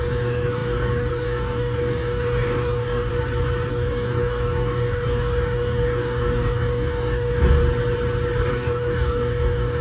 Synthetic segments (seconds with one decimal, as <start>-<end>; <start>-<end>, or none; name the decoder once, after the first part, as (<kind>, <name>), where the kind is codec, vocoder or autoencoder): 0.0-3.1 (codec, DAC); 3.7-7.6; 8.5-9.8